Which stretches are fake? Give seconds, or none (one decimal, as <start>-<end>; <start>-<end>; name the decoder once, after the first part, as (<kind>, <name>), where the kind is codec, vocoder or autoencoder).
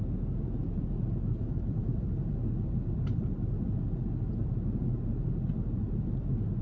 none